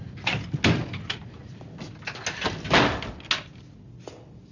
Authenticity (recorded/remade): recorded